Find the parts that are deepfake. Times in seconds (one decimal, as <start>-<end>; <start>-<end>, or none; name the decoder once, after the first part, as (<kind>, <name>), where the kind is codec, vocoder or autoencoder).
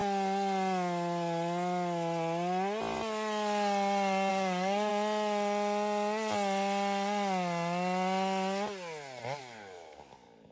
4.3-4.9 (codec, DAC); 9.4-10.5